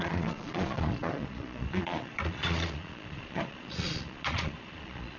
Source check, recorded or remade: remade